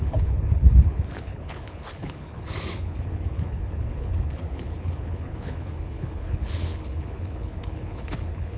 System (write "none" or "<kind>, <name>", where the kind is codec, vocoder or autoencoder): codec, HILCodec